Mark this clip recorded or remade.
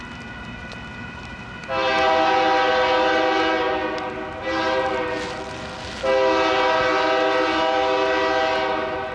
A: recorded